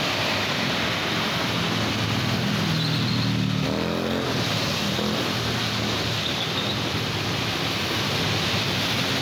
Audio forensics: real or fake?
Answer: real